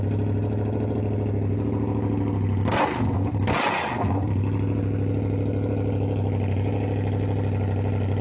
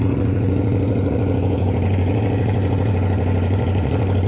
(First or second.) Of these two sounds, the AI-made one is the second